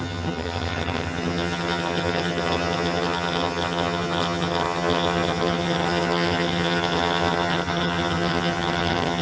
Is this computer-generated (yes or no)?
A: yes